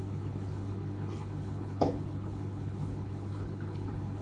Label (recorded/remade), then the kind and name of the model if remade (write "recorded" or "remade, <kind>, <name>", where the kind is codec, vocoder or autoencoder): remade, codec, HILCodec